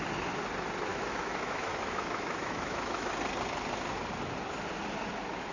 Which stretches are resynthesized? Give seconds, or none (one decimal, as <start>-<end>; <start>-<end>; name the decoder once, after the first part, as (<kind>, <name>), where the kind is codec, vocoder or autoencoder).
0.9-3.1 (autoencoder, DAC-VAE)